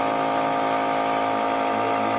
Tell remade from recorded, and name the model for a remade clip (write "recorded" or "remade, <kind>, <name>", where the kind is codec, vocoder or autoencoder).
recorded